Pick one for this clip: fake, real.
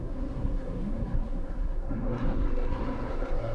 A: fake